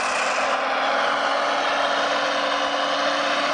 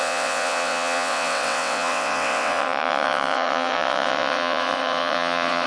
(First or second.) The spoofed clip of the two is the second